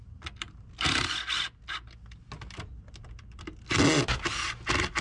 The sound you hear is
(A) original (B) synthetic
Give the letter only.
A